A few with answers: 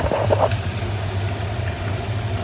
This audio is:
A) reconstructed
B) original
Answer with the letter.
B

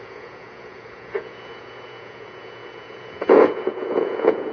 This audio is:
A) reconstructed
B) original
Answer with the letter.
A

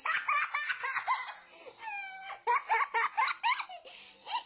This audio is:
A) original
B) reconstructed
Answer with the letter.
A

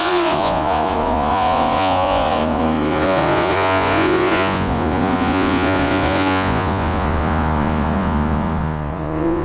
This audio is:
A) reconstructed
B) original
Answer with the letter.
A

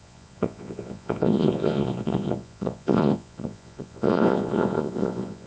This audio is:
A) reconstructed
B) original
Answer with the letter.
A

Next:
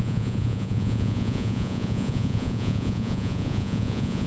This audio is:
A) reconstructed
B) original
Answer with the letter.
A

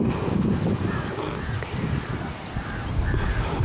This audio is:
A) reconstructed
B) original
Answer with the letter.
B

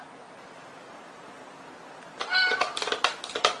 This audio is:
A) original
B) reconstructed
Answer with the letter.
A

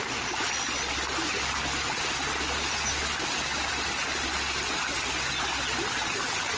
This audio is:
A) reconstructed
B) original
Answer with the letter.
B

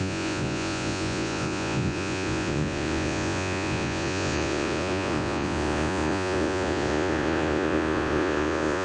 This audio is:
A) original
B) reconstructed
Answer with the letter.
B